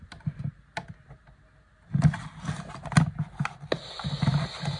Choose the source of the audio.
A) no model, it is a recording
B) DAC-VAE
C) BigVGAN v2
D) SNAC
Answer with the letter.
A